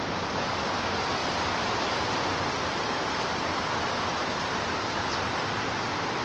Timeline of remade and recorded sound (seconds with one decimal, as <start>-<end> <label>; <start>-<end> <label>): 0.0-1.2 recorded; 1.2-3.6 remade; 3.6-4.2 recorded; 4.2-5.3 remade; 5.3-6.2 recorded